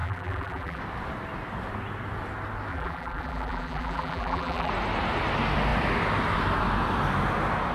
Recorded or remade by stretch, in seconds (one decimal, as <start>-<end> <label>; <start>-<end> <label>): 0.0-0.8 remade; 0.8-2.7 recorded; 2.7-4.7 remade; 4.7-7.7 recorded